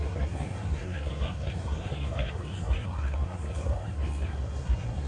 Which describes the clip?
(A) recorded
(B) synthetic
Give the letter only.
B